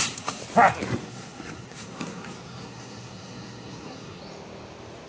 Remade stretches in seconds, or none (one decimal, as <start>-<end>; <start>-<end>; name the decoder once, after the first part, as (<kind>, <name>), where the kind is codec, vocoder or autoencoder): 0.0-0.4 (codec, SNAC); 1.0-4.2